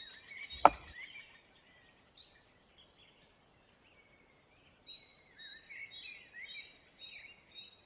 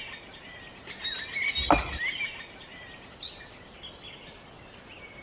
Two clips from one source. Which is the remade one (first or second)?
first